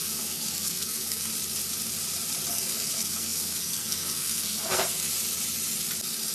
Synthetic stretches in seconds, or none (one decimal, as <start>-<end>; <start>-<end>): 0.0-1.3; 2.5-5.1

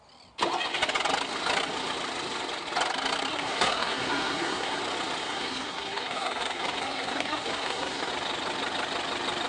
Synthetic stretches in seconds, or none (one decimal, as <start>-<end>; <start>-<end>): 3.3-4.8; 5.2-8.1

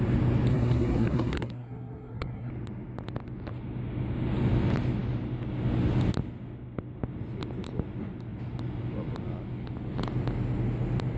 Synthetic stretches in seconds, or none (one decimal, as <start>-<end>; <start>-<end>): 0.5-2.5

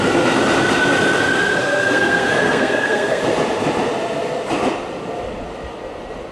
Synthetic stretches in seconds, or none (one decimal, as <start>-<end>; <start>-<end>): 1.6-3.2

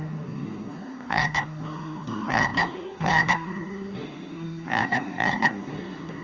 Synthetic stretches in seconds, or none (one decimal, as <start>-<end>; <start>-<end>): 0.0-6.2

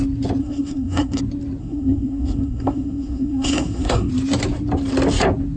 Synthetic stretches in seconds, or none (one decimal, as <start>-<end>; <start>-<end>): 0.4-1.2; 1.6-4.1